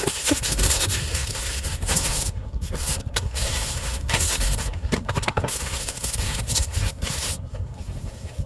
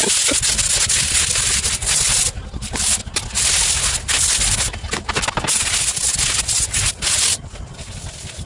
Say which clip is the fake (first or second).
first